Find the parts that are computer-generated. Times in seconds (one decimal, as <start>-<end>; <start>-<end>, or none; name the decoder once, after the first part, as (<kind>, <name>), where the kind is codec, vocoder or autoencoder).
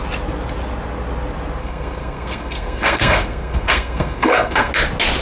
1.6-4.7 (codec, SNAC)